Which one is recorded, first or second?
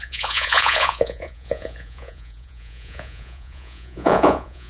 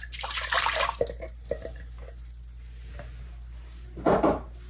second